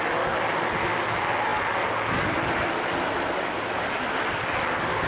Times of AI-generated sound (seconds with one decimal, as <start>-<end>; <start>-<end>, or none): none